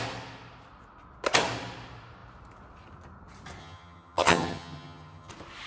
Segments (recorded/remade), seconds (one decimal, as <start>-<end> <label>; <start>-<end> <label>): 0.0-3.6 recorded; 3.6-5.3 remade; 5.3-5.7 recorded